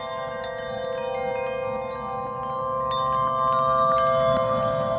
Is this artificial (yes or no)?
no